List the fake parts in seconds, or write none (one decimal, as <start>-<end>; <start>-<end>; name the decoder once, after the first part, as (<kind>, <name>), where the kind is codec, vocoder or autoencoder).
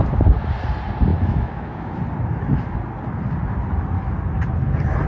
1.1-2.0 (autoencoder, DAC-VAE)